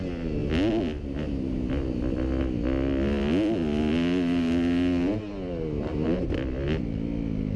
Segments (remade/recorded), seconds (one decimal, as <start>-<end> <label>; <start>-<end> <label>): 0.0-7.6 recorded